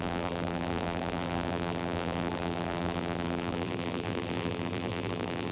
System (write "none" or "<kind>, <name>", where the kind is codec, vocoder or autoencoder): vocoder, BigVGAN v2